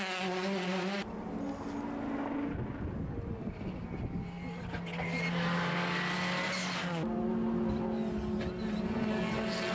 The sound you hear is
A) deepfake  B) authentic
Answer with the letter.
B